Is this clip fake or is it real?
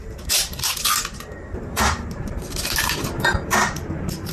fake